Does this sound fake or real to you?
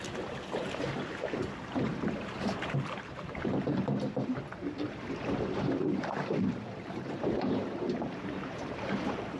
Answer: fake